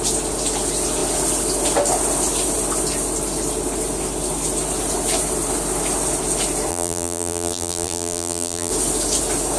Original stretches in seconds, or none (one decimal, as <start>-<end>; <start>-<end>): 0.0-6.7; 8.7-9.6